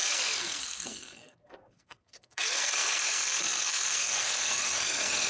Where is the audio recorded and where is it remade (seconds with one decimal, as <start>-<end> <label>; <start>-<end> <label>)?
0.0-5.3 remade